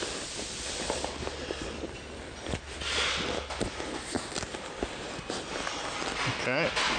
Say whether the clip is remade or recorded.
recorded